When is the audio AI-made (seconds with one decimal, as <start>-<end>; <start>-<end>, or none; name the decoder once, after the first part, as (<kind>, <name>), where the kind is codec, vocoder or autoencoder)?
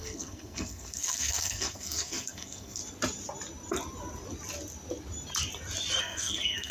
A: 0.0-2.8 (codec, SNAC); 6.0-6.7